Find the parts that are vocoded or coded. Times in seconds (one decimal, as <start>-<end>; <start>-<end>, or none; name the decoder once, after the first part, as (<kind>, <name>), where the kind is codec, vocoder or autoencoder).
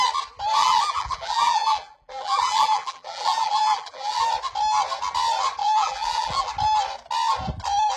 0.6-4.2 (vocoder, BigVGAN v2); 5.6-6.5